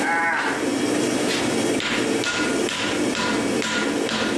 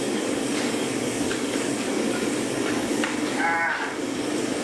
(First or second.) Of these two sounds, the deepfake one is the second